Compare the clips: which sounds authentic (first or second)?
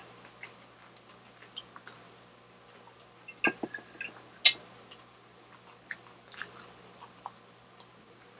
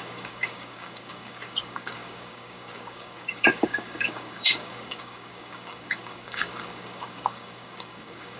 first